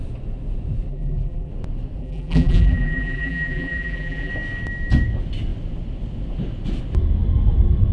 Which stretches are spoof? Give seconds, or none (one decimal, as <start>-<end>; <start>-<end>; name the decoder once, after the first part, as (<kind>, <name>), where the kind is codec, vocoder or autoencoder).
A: 0.9-1.5 (vocoder, BigVGAN v2); 2.0-4.3